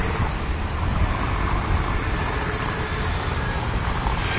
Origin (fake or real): fake